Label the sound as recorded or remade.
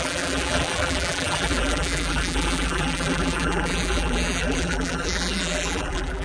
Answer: remade